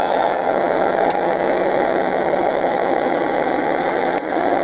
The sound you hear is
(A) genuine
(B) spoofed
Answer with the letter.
B